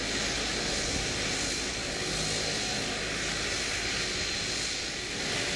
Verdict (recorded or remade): recorded